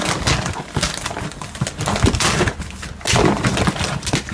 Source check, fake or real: real